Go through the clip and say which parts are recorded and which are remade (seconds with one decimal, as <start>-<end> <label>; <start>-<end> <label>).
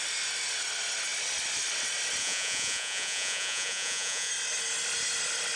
0.0-2.2 recorded; 2.2-4.3 remade; 4.3-5.6 recorded